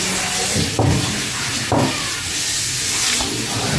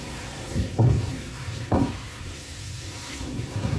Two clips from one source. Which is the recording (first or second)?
first